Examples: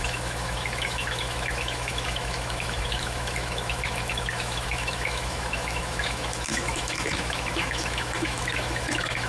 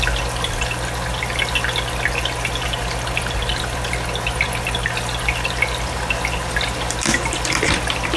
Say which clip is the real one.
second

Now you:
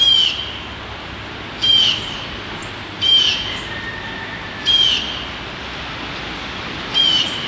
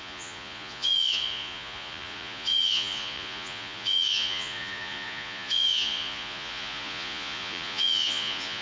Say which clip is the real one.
first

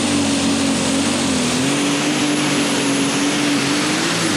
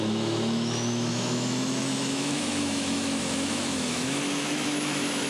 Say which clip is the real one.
first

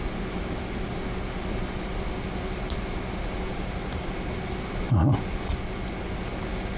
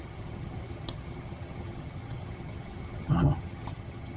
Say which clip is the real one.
first